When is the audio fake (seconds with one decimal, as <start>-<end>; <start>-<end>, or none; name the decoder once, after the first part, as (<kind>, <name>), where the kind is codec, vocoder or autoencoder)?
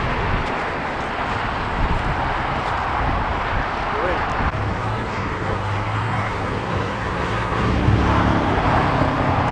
4.7-8.0 (codec, SNAC)